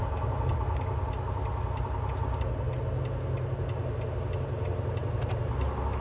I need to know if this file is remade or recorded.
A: recorded